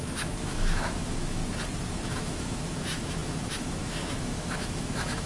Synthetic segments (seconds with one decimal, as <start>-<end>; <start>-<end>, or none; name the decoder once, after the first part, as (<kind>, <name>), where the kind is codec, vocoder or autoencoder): 0.0-1.4 (autoencoder, DAC-VAE); 1.9-5.3